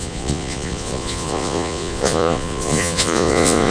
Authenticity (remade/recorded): remade